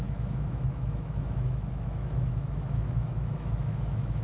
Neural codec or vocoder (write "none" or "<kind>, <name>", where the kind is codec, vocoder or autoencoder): autoencoder, DAC-VAE